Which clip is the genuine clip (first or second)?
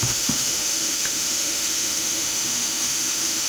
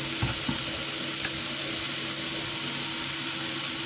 second